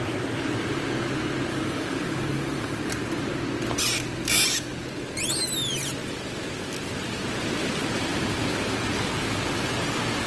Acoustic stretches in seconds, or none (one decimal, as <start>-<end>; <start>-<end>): 0.0-1.5; 2.9-10.3